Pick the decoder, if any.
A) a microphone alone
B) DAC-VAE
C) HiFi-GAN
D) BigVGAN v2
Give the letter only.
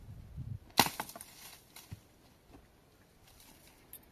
A